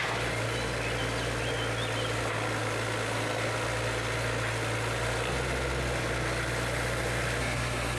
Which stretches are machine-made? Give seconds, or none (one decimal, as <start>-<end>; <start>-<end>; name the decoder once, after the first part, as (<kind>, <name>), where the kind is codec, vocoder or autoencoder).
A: 7.4-8.0 (codec, SNAC)